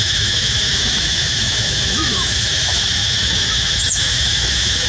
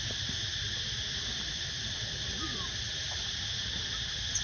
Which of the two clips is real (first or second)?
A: second